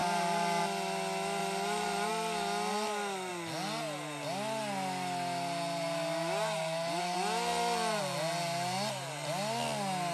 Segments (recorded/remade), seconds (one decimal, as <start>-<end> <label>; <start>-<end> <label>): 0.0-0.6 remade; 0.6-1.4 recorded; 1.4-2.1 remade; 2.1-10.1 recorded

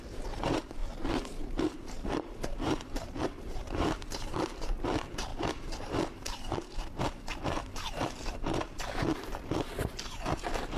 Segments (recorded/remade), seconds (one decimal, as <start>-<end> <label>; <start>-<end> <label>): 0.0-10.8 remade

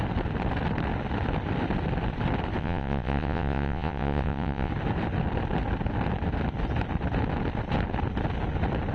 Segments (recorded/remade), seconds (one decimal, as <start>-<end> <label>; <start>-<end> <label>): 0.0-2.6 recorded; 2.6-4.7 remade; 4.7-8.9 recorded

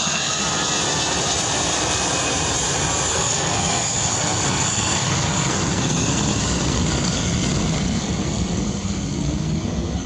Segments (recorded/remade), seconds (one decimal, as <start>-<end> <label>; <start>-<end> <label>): 0.0-0.4 remade; 0.4-3.1 recorded; 3.1-10.1 remade